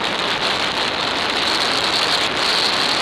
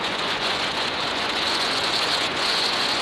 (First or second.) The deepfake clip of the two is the second